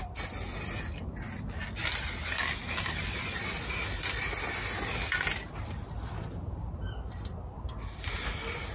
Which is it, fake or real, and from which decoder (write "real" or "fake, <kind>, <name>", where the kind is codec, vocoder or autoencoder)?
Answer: real